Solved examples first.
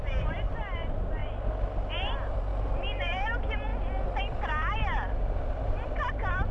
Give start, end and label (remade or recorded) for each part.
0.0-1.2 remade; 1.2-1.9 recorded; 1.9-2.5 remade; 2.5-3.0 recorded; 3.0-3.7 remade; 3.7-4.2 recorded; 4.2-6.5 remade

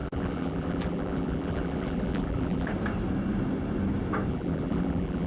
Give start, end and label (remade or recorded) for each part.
0.0-2.7 remade; 2.7-4.3 recorded; 4.3-5.3 remade

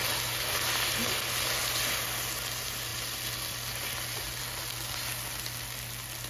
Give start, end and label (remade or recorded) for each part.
0.0-6.3 recorded

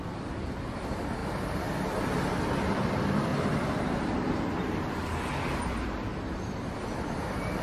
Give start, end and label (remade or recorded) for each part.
0.0-1.2 remade; 1.2-2.0 recorded; 2.0-3.3 remade; 3.3-5.6 recorded; 5.6-7.6 remade

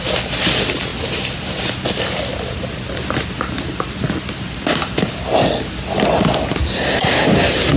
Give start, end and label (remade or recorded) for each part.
0.0-7.8 recorded